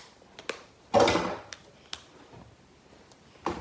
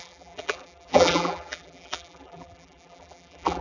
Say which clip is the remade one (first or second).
second